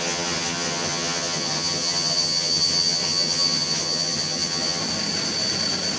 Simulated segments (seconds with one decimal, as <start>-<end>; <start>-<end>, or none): 0.0-4.8